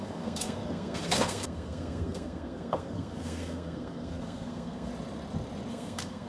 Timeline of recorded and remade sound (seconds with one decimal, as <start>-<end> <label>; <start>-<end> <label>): 0.0-4.9 remade; 4.9-5.7 recorded; 5.7-6.3 remade